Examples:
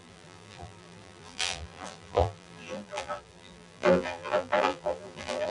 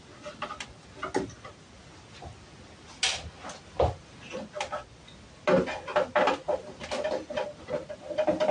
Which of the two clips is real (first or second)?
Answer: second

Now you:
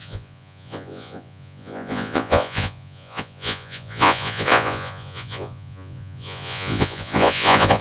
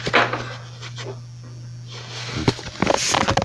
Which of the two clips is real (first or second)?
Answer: second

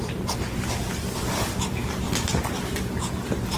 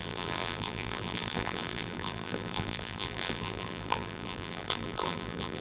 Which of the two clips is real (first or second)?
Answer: first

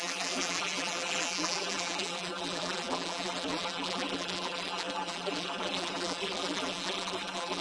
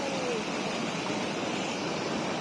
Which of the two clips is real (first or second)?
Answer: second